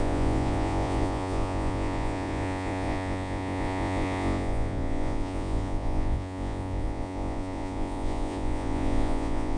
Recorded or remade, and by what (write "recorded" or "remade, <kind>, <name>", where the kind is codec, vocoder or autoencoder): remade, vocoder, Vocos